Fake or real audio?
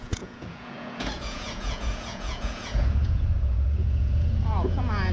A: fake